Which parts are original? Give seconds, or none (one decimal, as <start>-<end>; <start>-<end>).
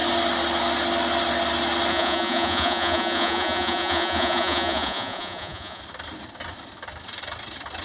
0.0-1.9; 5.8-7.8